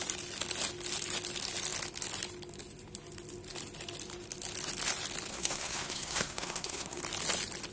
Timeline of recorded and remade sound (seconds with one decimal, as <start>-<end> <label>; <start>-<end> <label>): 0.0-5.3 recorded; 5.3-7.0 remade; 7.0-7.7 recorded